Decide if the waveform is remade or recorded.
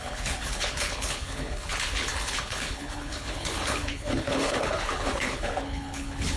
remade